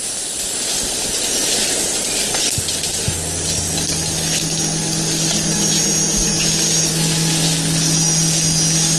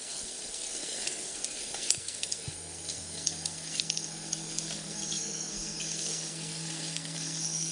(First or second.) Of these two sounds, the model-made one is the second